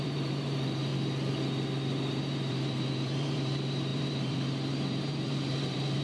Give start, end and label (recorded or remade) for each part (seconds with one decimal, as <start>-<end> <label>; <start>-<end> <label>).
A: 0.0-0.9 remade; 0.9-2.2 recorded; 2.2-6.0 remade